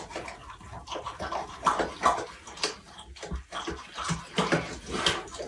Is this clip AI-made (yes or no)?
no